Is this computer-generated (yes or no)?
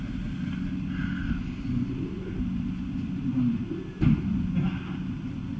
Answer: no